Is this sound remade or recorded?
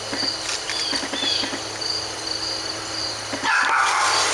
recorded